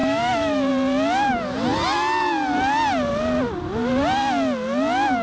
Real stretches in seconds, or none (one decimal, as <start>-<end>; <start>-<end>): 0.7-5.2